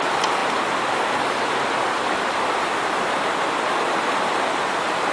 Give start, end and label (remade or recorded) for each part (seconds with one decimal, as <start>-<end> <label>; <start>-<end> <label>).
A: 0.0-5.1 recorded